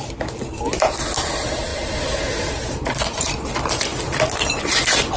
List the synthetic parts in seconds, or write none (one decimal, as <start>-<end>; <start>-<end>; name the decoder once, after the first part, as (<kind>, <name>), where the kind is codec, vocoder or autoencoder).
0.0-1.7 (vocoder, BigVGAN v2); 2.3-3.9; 4.6-5.2